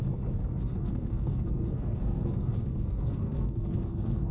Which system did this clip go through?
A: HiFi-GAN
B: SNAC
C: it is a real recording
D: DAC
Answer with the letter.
B